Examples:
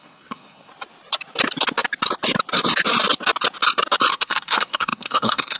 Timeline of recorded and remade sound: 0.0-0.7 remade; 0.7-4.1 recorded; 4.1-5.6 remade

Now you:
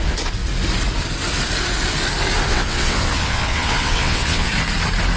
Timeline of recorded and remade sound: 0.0-2.5 recorded; 2.5-4.5 remade; 4.5-5.2 recorded

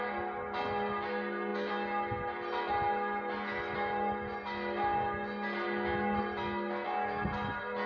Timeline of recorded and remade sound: 0.0-7.9 recorded

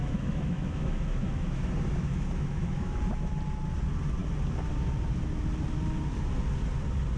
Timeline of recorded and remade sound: 0.0-1.7 remade; 1.7-2.1 recorded; 2.1-3.0 remade; 3.0-7.2 recorded

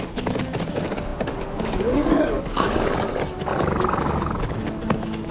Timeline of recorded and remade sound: 0.0-3.1 remade; 3.1-4.0 recorded; 4.0-5.3 remade